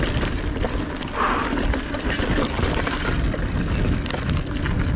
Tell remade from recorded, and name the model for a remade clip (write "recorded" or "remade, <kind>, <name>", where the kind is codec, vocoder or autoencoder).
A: recorded